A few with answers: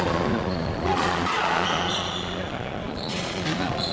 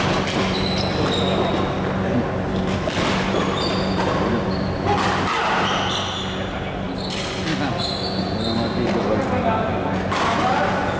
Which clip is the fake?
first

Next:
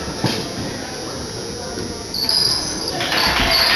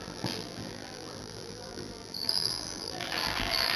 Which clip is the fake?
second